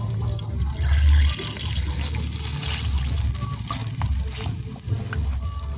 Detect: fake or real real